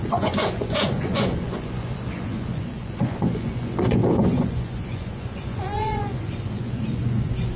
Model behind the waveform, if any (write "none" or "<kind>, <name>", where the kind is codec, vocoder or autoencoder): vocoder, Vocos